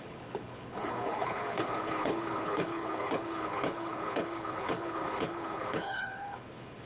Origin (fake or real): fake